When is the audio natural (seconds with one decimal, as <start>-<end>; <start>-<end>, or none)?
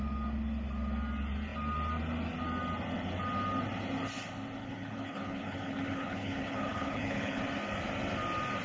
0.0-4.6; 7.4-8.6